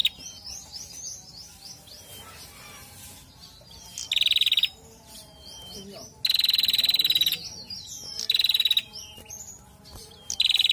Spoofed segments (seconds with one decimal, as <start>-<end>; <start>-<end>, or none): none